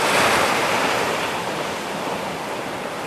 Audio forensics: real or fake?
real